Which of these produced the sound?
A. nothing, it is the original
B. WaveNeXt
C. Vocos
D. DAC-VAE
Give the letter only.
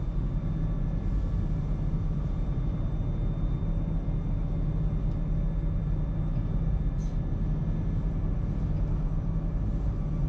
A